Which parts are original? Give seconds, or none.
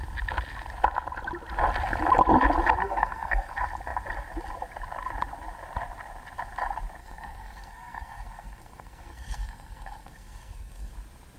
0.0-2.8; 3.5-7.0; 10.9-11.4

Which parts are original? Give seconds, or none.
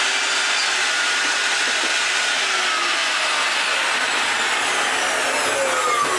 0.0-0.6; 1.3-6.2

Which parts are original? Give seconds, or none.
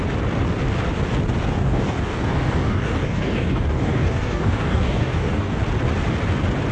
0.0-1.6; 5.6-6.7